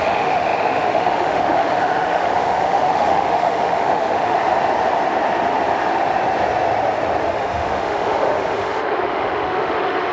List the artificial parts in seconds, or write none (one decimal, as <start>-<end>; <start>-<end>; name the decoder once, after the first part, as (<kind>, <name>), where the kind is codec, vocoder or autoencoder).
0.0-4.4 (autoencoder, DAC-VAE); 7.2-10.1